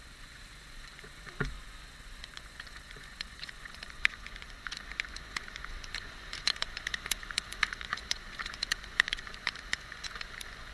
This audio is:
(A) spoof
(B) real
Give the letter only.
A